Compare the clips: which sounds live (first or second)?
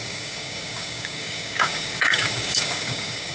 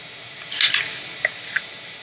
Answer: second